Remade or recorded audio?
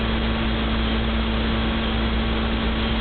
recorded